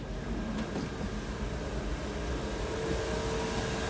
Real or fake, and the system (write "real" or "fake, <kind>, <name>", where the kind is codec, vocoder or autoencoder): real